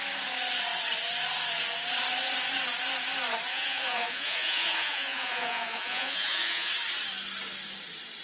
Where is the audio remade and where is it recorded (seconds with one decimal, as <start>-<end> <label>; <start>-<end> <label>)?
0.0-3.5 recorded; 3.5-6.7 remade; 6.7-8.2 recorded